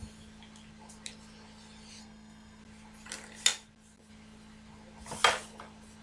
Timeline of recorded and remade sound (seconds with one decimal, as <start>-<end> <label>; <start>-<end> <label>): 0.0-2.0 recorded; 2.0-2.6 remade; 2.6-6.0 recorded